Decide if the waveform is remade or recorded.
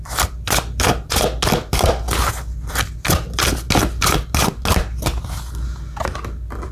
recorded